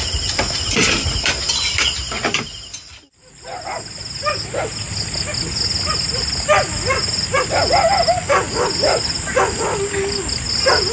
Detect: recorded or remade recorded